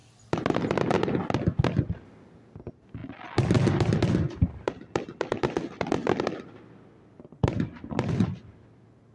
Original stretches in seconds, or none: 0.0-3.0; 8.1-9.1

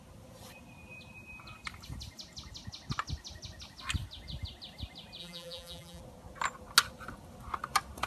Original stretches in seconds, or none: 0.0-5.2; 6.0-8.1

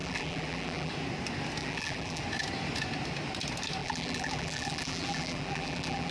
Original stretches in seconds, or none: 0.9-1.6; 2.2-3.8

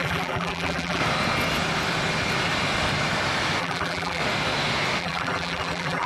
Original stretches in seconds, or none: 1.0-3.6; 4.2-5.0

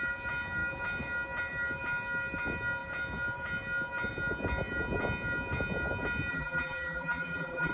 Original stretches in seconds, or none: 0.0-6.3

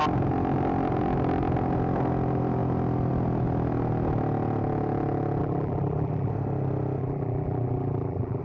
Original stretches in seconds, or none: 0.0-5.4; 6.3-7.0